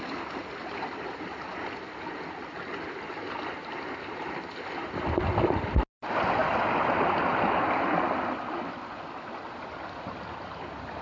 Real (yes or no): yes